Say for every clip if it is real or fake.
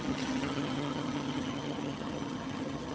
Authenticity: fake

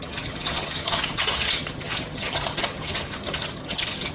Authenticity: fake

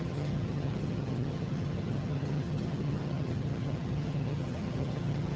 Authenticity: fake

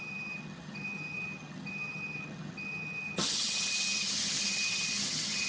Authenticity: fake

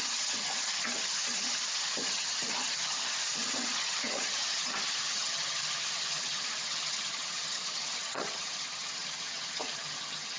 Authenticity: fake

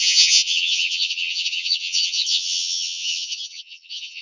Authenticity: fake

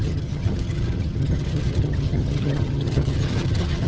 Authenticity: fake